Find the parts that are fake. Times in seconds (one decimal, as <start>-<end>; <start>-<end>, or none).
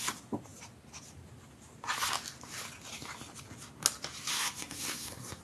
4.3-5.4